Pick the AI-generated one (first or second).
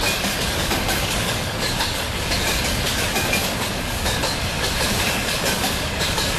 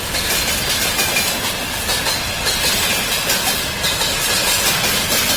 first